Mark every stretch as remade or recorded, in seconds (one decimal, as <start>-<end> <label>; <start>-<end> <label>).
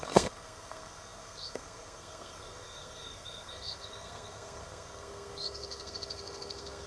0.0-6.9 remade